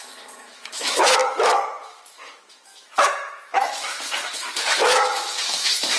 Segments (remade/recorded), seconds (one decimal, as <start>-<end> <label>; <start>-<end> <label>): 0.0-6.0 remade

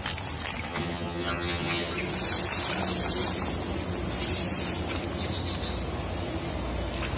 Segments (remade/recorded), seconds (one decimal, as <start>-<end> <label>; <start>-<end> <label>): 0.0-0.7 recorded; 0.7-1.9 remade; 1.9-7.2 recorded